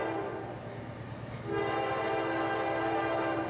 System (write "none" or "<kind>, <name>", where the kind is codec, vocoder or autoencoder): none